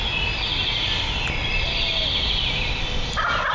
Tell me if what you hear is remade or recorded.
recorded